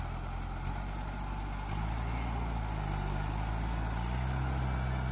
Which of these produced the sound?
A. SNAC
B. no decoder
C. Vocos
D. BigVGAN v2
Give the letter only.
B